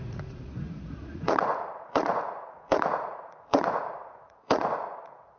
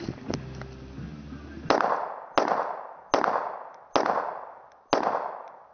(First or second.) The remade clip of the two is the first